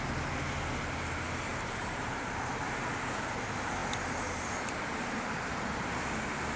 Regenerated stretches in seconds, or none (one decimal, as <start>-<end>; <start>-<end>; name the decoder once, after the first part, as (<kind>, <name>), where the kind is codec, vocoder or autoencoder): 1.5-2.6 (vocoder, BigVGAN v2)